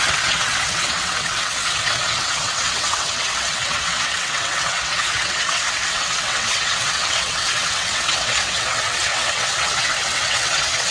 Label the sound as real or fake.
fake